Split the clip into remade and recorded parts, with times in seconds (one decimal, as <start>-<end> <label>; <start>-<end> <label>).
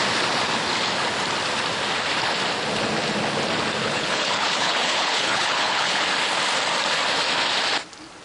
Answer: 0.0-3.8 recorded; 3.8-6.0 remade; 6.0-8.2 recorded